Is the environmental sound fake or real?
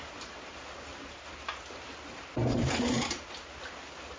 real